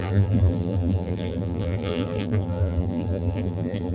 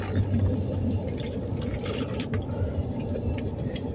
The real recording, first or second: second